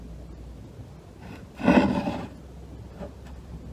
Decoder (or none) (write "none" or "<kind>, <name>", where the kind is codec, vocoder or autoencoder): none